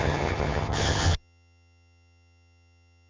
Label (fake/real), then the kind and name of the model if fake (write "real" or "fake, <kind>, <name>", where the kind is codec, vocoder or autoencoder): fake, vocoder, HiFi-GAN